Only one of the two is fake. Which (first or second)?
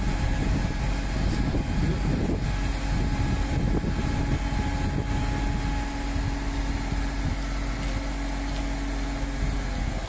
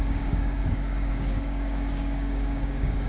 second